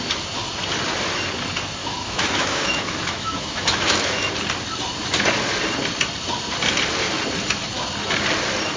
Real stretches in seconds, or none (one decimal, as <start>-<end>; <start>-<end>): 0.0-1.8; 4.3-8.8